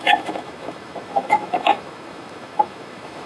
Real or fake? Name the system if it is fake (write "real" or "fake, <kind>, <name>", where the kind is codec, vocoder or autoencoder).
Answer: fake, autoencoder, DAC-VAE